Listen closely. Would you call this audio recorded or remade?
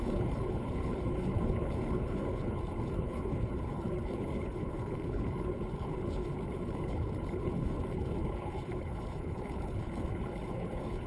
remade